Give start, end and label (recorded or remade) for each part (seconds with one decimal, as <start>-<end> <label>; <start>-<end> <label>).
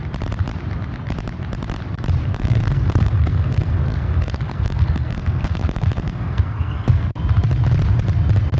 0.0-2.2 recorded; 2.2-7.2 remade; 7.2-8.6 recorded